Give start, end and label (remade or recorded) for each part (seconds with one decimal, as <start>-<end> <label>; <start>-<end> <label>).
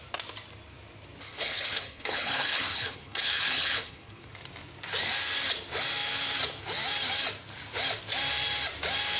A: 0.0-1.3 recorded; 1.3-4.3 remade; 4.3-9.2 recorded